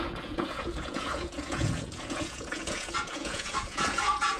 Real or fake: fake